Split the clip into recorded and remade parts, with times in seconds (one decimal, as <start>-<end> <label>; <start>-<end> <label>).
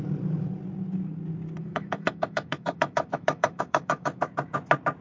0.0-1.6 recorded; 1.6-4.2 remade; 4.2-5.0 recorded